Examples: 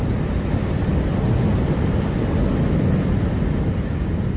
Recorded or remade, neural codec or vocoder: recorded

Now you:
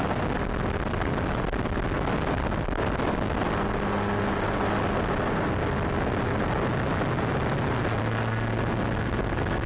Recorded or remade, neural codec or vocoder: recorded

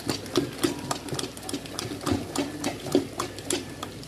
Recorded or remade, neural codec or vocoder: recorded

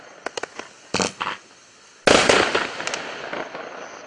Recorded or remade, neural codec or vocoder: recorded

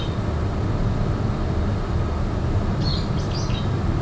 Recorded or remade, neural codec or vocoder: recorded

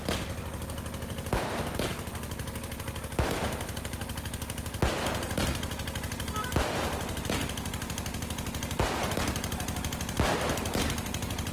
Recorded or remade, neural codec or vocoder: recorded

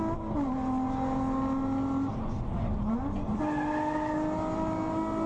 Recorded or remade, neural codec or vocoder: recorded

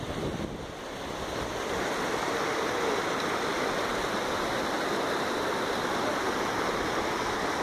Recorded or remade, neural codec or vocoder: recorded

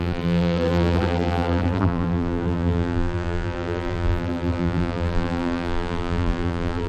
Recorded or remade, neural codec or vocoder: remade, vocoder, BigVGAN v2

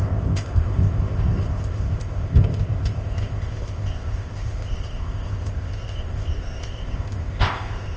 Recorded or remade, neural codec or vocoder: remade, codec, ZipCodec